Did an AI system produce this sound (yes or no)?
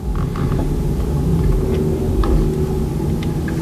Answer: no